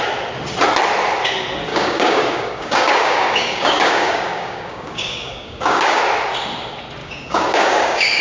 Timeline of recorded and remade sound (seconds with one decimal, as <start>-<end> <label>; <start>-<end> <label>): 0.0-1.7 recorded; 1.7-6.0 remade; 6.0-7.0 recorded; 7.0-8.2 remade